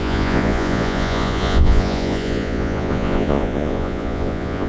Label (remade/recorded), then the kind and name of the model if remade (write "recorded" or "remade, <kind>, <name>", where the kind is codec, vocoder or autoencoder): remade, vocoder, Vocos